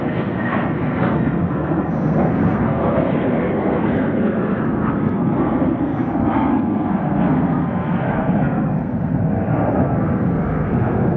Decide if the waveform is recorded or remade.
remade